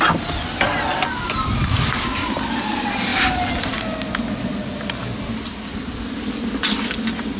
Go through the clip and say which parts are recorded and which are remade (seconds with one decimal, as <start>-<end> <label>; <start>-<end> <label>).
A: 0.0-7.4 recorded